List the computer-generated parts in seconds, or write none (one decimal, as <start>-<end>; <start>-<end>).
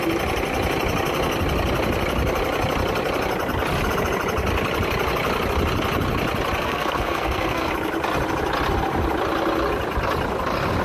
6.6-7.7